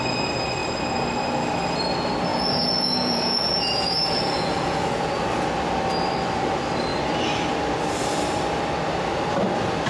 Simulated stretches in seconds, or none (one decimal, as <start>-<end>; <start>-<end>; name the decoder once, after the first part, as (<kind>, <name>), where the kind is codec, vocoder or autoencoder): 2.3-5.2 (vocoder, Vocos)